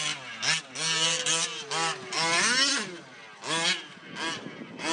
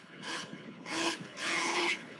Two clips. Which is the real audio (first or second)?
first